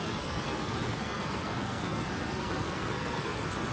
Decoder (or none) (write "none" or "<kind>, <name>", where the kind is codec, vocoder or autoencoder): codec, SNAC